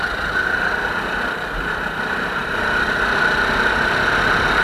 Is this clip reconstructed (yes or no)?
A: no